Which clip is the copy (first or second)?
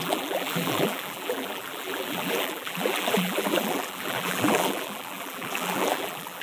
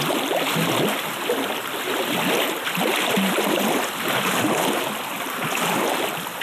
first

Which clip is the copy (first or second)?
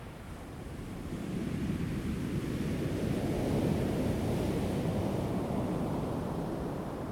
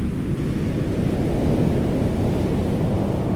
first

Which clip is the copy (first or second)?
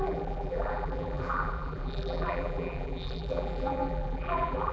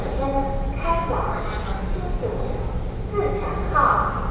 first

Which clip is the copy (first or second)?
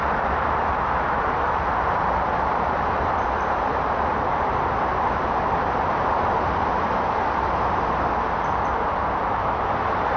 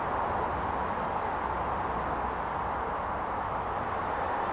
first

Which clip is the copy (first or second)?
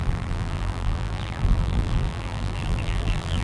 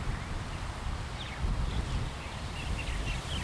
first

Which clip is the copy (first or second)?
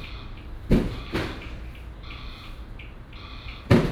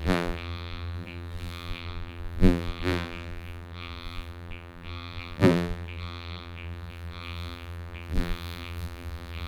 second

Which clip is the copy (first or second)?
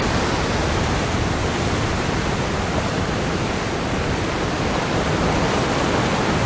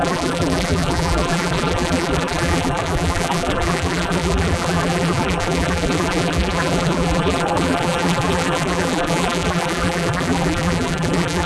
second